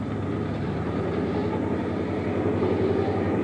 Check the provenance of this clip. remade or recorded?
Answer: remade